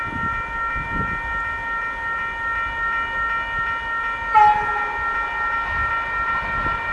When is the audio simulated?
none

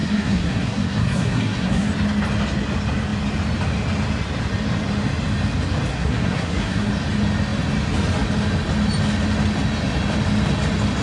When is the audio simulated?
0.0-1.9 (codec, SNAC); 5.9-6.9

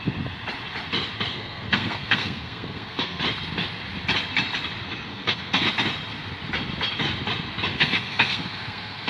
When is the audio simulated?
1.3-3.2 (codec, SNAC); 5.1-5.7; 7.7-9.1

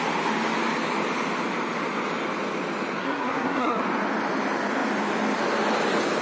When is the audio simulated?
3.0-3.8 (codec, SNAC)

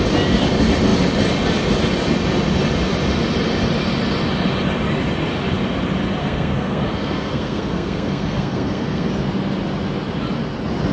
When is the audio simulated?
6.2-9.1 (codec, SNAC)

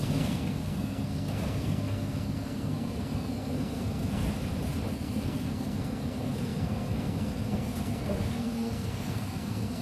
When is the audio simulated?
0.0-4.2 (codec, SNAC); 4.9-9.8

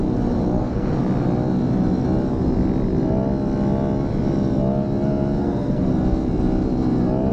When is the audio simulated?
0.6-1.0 (codec, SNAC); 5.4-5.9